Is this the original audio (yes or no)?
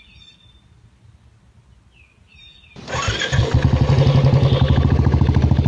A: yes